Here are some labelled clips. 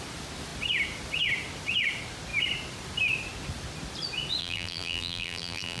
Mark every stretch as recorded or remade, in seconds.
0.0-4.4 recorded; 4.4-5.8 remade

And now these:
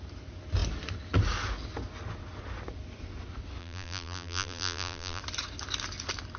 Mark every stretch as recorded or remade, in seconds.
0.0-3.6 recorded; 3.6-5.2 remade; 5.2-6.4 recorded

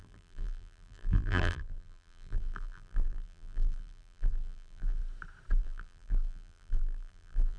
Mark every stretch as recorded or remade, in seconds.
0.0-5.0 remade; 5.0-5.6 recorded; 5.6-7.6 remade

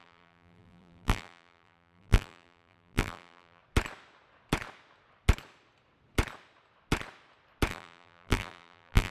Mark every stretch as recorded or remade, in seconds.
0.0-3.6 remade; 3.6-7.7 recorded; 7.7-9.1 remade

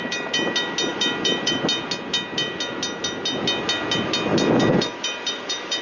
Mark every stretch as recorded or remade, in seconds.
0.0-0.9 recorded; 0.9-1.6 remade; 1.6-4.3 recorded; 4.3-5.8 remade

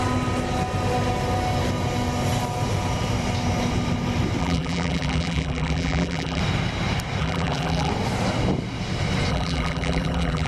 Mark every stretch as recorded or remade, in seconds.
0.0-4.4 recorded; 4.4-6.4 remade; 6.4-7.2 recorded; 7.2-7.9 remade; 7.9-9.3 recorded; 9.3-10.5 remade

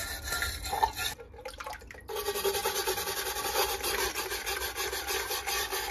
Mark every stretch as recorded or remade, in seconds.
0.0-5.9 recorded

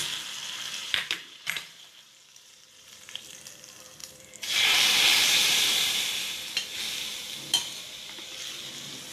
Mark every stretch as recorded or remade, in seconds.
0.0-0.8 recorded; 0.8-3.2 remade; 3.2-4.0 recorded; 4.0-6.3 remade; 6.3-9.1 recorded